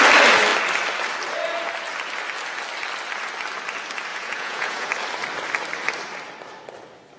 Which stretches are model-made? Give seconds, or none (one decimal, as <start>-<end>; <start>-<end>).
4.1-4.9